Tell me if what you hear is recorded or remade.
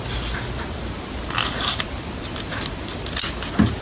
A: recorded